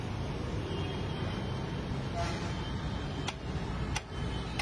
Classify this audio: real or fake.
real